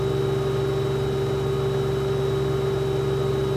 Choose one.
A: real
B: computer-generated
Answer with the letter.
A